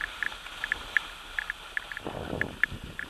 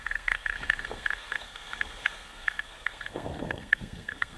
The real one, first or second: first